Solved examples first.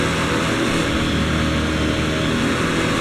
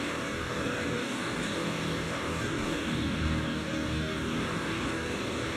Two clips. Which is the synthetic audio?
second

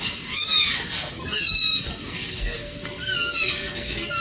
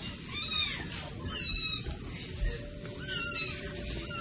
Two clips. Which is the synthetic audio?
first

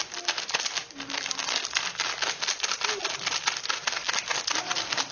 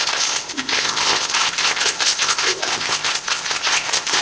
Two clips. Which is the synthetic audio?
second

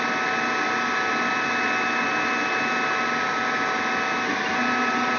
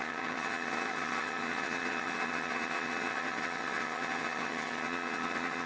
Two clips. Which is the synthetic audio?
second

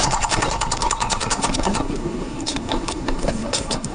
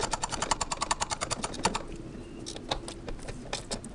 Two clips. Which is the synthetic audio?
first